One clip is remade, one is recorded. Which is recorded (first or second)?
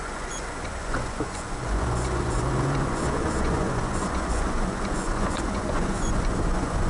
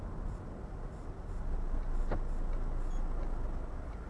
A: second